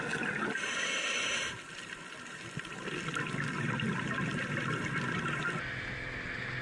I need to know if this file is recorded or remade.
recorded